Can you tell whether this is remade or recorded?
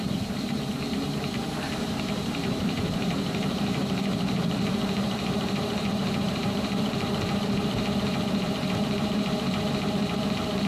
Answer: remade